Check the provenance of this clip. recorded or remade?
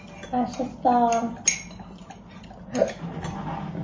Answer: recorded